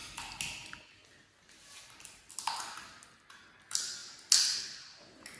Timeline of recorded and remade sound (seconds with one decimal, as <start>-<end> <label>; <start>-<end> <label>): 0.0-5.4 recorded